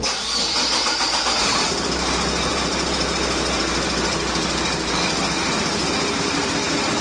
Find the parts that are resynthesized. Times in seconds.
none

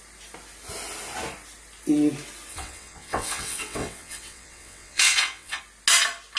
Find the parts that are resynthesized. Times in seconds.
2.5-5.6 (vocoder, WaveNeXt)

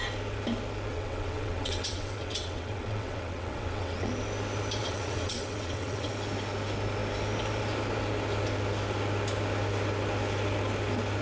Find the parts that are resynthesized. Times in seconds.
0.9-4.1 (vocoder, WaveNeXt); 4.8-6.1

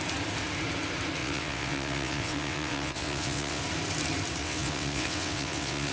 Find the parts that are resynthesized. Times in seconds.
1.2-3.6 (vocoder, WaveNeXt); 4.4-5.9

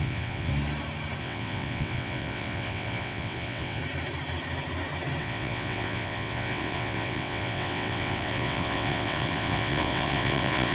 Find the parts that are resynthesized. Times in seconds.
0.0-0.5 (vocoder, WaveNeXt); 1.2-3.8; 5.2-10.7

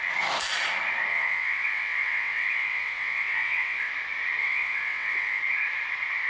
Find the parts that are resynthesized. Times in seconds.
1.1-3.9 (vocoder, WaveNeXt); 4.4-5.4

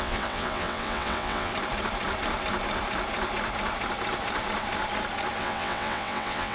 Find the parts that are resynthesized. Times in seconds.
0.0-1.5 (vocoder, WaveNeXt); 5.4-6.5

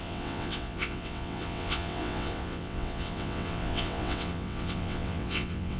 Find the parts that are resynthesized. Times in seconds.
0.0-5.8 (vocoder, WaveNeXt)